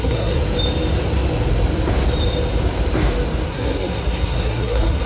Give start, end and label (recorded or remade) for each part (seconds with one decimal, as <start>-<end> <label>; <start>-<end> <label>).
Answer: 0.0-0.4 remade; 0.4-3.5 recorded; 3.5-5.1 remade